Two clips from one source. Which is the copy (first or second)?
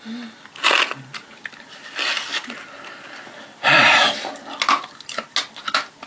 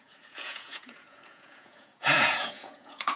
second